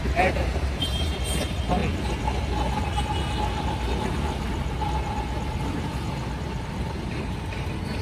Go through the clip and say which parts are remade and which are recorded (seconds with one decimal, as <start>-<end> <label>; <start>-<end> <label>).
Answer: 0.0-1.8 remade; 1.8-6.6 recorded; 6.6-8.0 remade